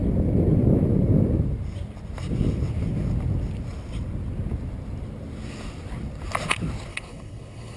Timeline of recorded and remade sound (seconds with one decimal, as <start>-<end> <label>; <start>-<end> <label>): 0.0-6.9 recorded; 6.9-7.8 remade